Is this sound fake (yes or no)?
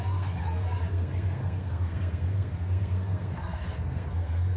yes